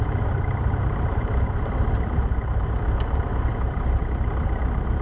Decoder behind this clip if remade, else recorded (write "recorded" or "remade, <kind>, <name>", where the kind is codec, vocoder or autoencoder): remade, vocoder, BigVGAN v2